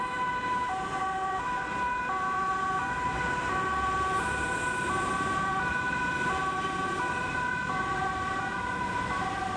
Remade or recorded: remade